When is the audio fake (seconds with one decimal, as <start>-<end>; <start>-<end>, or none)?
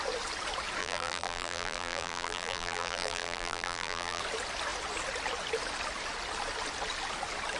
0.8-4.2